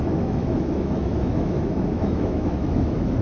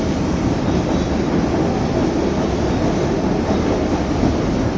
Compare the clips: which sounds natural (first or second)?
second